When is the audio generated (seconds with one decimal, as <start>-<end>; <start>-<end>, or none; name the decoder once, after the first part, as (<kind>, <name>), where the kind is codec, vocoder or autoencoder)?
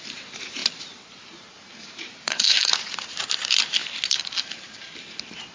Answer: 0.0-0.6 (vocoder, BigVGAN v2); 1.2-2.7; 4.2-5.5